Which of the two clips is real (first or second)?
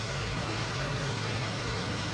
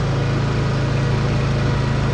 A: second